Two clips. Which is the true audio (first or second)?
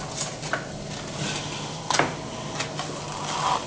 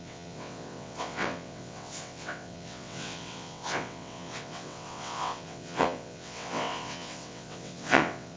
first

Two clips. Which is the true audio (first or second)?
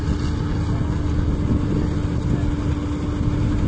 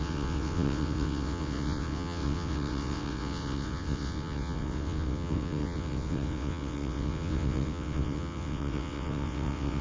first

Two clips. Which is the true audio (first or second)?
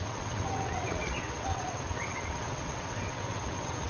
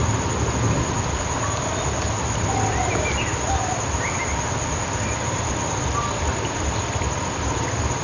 second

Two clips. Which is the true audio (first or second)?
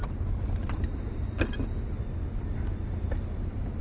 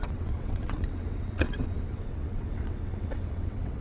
first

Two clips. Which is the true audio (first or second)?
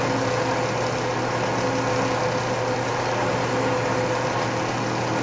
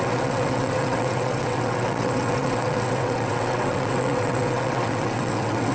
first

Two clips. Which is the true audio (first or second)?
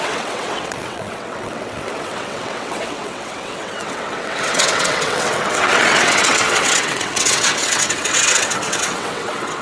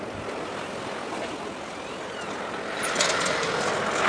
second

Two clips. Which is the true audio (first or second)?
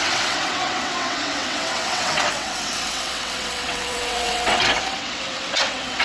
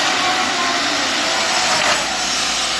second